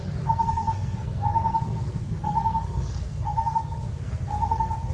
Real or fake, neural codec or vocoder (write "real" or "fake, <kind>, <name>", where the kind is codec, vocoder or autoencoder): fake, codec, SNAC